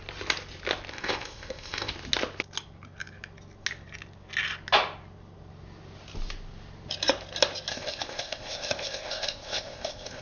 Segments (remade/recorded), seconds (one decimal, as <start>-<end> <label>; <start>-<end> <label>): 0.0-0.9 recorded; 0.9-1.9 remade; 1.9-7.7 recorded; 7.7-10.2 remade